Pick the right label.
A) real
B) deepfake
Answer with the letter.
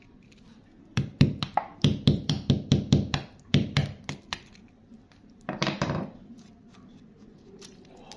B